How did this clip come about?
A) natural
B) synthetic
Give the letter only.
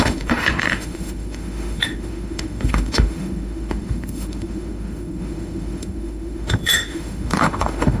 B